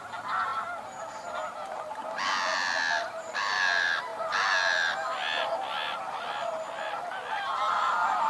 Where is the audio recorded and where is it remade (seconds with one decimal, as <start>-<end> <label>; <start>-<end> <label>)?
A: 0.0-8.3 recorded